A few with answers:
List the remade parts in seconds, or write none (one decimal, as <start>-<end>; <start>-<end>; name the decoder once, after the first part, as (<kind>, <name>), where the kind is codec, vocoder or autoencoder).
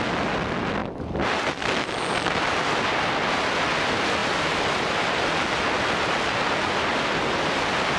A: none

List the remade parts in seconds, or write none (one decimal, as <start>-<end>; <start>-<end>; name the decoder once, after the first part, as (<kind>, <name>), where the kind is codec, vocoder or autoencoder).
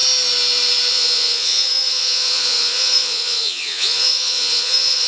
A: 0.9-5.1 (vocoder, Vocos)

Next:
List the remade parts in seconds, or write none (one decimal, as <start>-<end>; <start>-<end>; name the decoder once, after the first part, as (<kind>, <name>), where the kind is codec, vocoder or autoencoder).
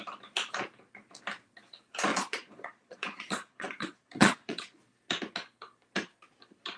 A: 2.1-4.8 (vocoder, Vocos)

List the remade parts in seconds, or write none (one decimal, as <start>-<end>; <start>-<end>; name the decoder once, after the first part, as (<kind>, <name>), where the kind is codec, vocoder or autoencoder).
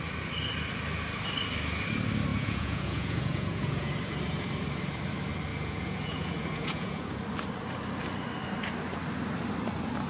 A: 2.3-3.9 (vocoder, Vocos); 5.5-7.1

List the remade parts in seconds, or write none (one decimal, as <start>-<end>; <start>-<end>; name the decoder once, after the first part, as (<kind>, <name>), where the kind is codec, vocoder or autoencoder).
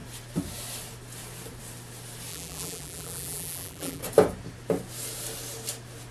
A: 2.3-4.0 (vocoder, BigVGAN v2)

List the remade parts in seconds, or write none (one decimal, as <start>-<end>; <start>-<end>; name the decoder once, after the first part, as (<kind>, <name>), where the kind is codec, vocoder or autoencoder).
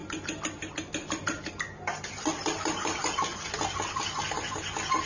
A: none